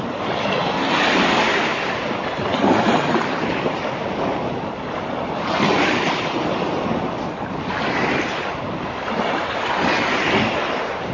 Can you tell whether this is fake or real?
real